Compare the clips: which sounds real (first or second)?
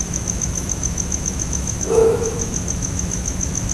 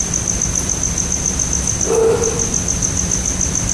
second